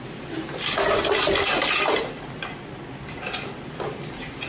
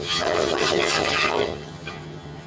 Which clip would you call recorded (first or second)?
first